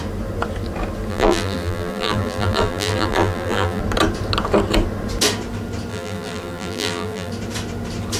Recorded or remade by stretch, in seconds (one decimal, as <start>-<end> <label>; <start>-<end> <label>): 0.0-1.1 recorded; 1.1-3.8 remade; 3.8-5.9 recorded; 5.9-7.3 remade; 7.3-8.2 recorded